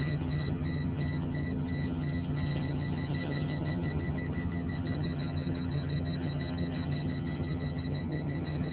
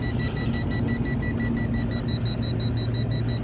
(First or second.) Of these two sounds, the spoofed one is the first